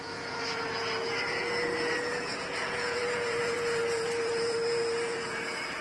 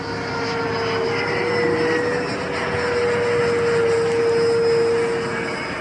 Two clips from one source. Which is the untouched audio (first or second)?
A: second